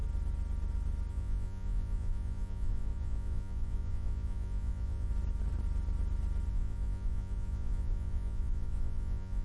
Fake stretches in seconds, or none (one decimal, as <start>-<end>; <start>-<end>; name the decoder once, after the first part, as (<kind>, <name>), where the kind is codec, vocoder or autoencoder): 1.1-5.1 (vocoder, Vocos); 6.5-9.4